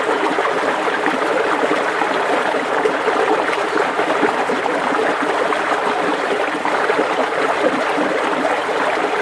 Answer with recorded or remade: recorded